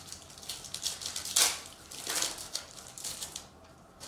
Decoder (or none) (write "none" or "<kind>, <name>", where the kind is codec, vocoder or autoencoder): vocoder, BigVGAN v2